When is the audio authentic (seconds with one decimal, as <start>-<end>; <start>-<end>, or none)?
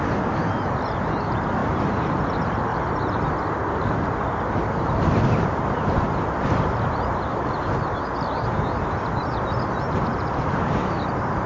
0.0-11.5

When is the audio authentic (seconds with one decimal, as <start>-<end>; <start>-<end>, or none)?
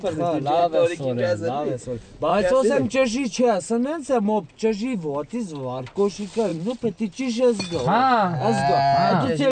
0.0-0.6; 1.8-2.3; 2.9-9.5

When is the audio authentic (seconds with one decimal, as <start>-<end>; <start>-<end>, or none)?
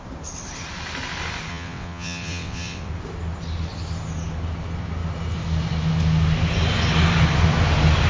0.0-1.5; 2.9-8.1